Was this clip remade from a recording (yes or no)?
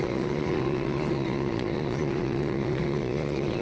yes